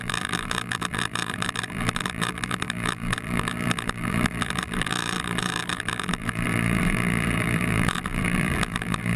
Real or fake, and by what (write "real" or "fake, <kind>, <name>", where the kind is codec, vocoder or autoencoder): fake, vocoder, BigVGAN v2